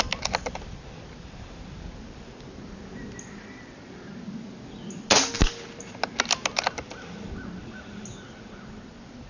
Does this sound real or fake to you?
real